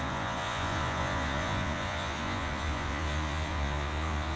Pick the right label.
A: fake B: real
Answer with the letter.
A